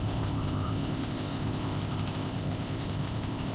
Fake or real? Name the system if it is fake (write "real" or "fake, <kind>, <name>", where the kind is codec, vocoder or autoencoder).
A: fake, codec, ZipCodec